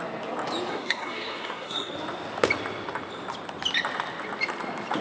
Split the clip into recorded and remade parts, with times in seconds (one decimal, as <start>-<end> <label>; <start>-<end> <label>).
0.0-0.7 recorded; 0.7-1.9 remade; 1.9-5.0 recorded